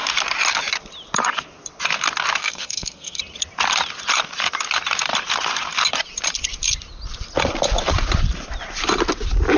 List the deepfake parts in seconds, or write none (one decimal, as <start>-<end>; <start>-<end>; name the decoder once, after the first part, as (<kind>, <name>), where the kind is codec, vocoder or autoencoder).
2.4-3.2 (codec, SNAC)